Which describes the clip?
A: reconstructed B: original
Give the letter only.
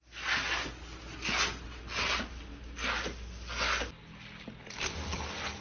B